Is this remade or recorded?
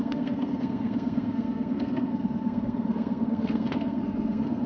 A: remade